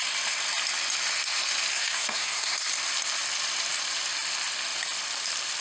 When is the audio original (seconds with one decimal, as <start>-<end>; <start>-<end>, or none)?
0.0-1.7; 2.7-5.6